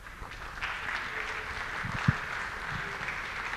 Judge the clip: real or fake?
real